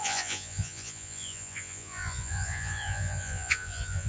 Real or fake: fake